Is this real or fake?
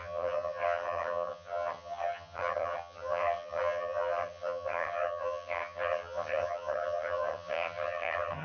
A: fake